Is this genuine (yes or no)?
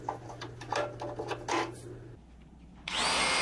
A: yes